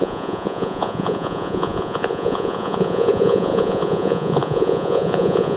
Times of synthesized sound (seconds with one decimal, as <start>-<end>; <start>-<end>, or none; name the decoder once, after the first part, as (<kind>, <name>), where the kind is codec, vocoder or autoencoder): 0.0-5.6 (vocoder, Vocos)